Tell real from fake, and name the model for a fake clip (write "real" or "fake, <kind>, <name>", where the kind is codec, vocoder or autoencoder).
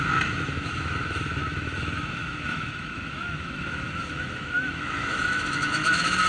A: fake, autoencoder, DAC-VAE